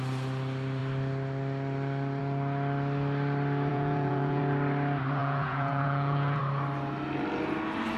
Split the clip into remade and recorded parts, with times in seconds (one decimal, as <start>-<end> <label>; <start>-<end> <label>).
0.0-3.7 recorded; 3.7-4.4 remade; 4.4-5.2 recorded; 5.2-6.4 remade; 6.4-8.0 recorded